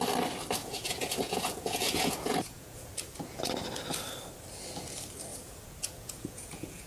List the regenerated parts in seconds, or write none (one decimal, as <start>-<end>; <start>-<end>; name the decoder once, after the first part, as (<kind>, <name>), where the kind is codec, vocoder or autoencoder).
0.6-3.4 (vocoder, Vocos); 5.3-6.9